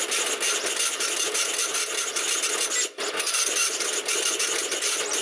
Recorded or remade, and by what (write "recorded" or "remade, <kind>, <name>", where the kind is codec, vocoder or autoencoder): recorded